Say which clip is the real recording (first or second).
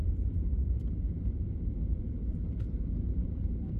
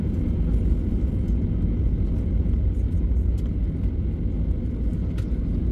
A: second